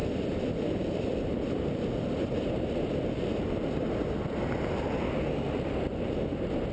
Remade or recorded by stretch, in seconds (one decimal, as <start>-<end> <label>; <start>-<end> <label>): 0.0-6.7 recorded